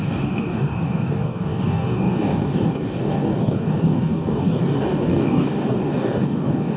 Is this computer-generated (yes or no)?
yes